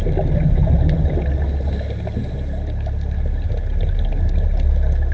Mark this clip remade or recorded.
recorded